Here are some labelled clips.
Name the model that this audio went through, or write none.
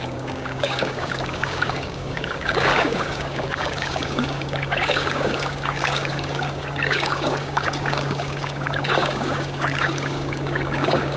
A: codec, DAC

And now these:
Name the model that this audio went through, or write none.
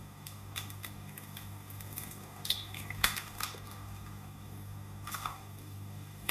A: codec, DAC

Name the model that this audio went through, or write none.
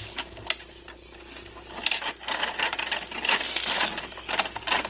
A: none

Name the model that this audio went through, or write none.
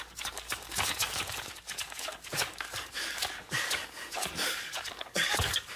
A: codec, DAC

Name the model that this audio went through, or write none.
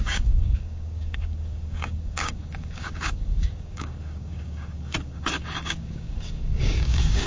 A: codec, DAC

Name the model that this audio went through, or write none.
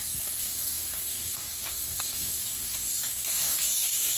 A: codec, DAC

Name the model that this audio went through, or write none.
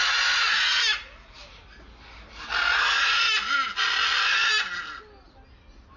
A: none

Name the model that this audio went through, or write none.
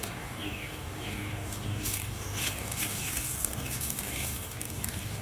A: codec, DAC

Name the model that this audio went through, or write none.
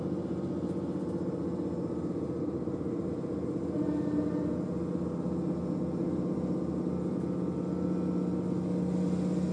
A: none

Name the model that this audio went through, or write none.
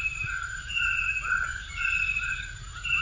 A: none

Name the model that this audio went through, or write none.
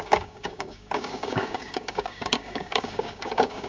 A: codec, DAC